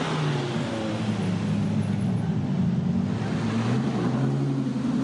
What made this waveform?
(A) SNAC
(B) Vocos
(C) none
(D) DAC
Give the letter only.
C